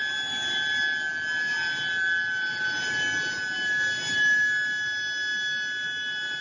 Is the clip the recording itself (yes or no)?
yes